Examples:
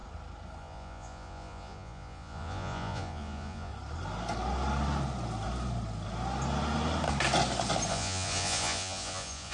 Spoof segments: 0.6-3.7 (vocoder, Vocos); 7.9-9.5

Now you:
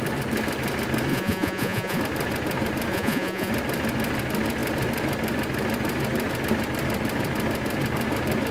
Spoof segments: 1.1-2.0 (vocoder, Vocos); 2.9-3.5

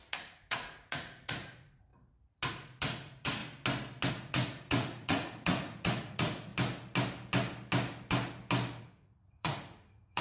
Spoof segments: 0.0-1.9 (vocoder, Vocos); 2.5-3.4; 4.1-6.5; 8.8-10.2

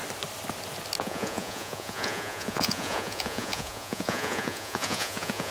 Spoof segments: 1.0-5.5 (vocoder, Vocos)

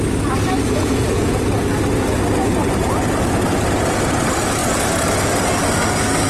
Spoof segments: 0.8-1.4 (vocoder, Vocos)

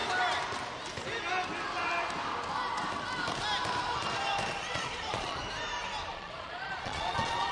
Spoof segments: 4.5-5.4 (vocoder, Vocos); 6.1-7.5